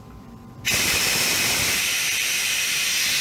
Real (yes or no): no